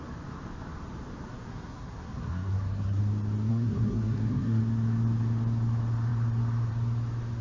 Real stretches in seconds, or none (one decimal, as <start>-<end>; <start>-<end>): 0.0-1.3; 3.0-3.5; 4.6-7.4